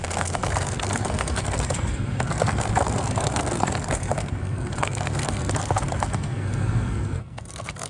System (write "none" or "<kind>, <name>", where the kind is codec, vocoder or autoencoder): codec, SNAC